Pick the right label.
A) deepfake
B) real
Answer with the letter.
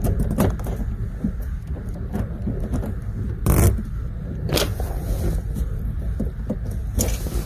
B